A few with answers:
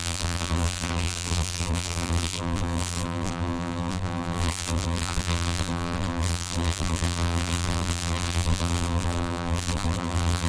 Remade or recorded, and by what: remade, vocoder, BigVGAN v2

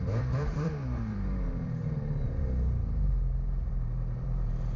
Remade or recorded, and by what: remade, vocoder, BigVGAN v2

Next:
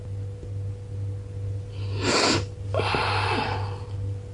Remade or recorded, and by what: recorded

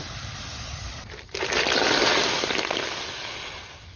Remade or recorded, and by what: recorded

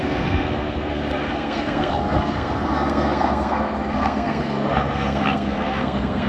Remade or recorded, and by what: remade, codec, SNAC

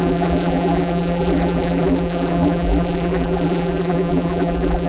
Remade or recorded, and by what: remade, vocoder, BigVGAN v2